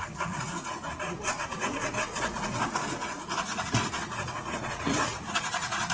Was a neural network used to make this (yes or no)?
yes